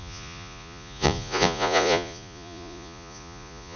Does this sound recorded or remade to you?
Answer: remade